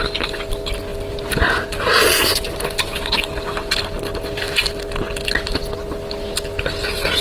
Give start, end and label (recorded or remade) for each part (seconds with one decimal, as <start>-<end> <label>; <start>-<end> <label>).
0.0-7.2 recorded

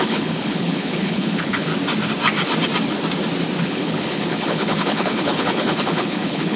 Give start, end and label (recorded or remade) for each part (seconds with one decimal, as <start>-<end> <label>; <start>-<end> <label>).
0.0-1.7 remade; 1.7-3.6 recorded; 3.6-6.6 remade